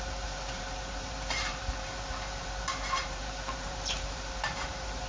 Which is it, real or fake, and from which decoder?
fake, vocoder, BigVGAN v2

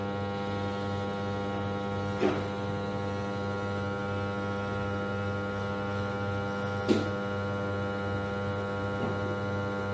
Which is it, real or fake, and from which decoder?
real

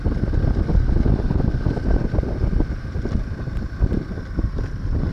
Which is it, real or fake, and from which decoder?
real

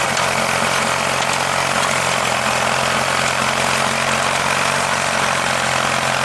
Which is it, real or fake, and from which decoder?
real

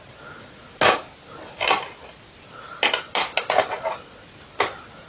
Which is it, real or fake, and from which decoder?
real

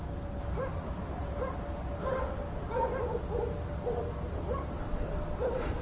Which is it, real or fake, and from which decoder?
real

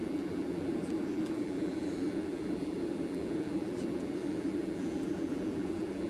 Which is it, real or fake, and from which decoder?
fake, vocoder, BigVGAN v2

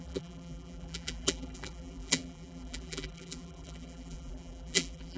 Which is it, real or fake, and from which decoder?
fake, vocoder, BigVGAN v2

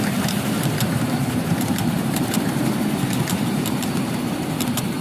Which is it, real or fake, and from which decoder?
fake, vocoder, BigVGAN v2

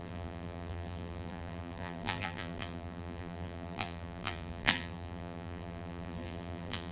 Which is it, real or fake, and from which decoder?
fake, vocoder, BigVGAN v2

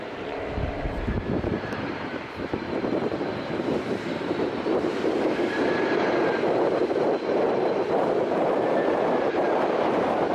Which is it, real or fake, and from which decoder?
fake, vocoder, BigVGAN v2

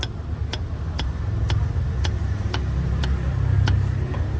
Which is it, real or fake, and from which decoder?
real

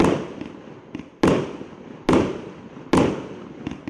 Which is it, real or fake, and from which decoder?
real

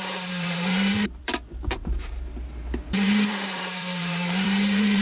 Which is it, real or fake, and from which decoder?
fake, vocoder, BigVGAN v2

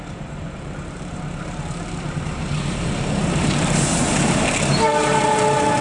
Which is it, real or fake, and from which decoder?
fake, vocoder, BigVGAN v2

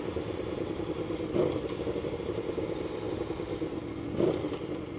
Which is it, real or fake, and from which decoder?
real